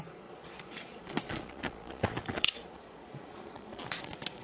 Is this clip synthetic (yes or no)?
yes